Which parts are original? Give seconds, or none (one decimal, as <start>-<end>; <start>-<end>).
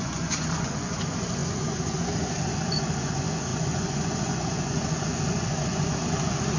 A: none